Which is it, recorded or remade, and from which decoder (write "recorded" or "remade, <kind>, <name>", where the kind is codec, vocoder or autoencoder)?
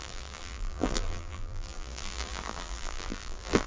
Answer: remade, vocoder, BigVGAN v2